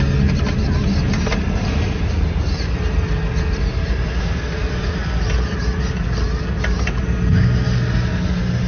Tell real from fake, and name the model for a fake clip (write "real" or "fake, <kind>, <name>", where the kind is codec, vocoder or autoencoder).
real